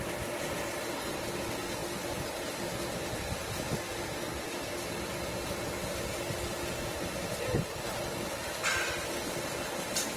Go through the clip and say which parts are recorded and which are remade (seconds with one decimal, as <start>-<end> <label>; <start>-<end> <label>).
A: 0.0-10.2 recorded